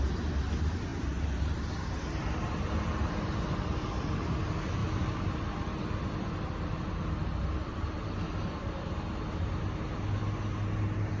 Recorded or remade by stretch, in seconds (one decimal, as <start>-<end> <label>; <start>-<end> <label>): 0.0-0.9 recorded; 0.9-4.1 remade; 4.1-4.8 recorded; 4.8-9.6 remade; 9.6-11.2 recorded